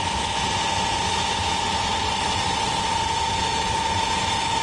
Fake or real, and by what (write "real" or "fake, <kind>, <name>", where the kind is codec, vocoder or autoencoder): real